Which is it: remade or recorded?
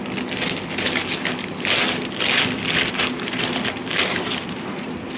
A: recorded